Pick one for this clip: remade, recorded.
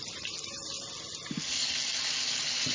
recorded